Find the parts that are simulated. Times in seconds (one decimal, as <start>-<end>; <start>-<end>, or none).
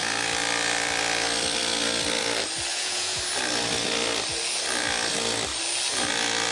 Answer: 2.7-3.2